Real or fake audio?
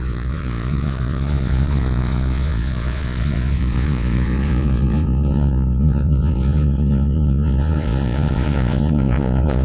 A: fake